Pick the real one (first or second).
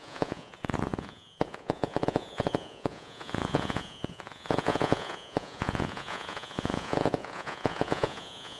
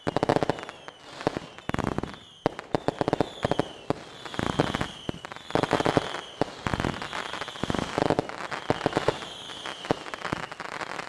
second